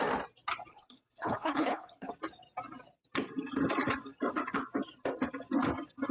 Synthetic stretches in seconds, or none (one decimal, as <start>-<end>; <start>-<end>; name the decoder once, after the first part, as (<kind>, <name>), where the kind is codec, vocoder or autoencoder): 0.7-2.1 (codec, HILCodec)